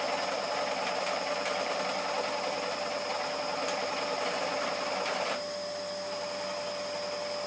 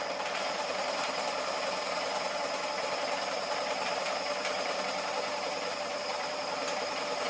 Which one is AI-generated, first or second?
second